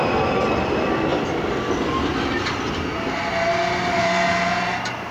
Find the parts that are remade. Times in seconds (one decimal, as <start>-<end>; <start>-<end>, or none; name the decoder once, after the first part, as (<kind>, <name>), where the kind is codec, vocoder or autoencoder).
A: none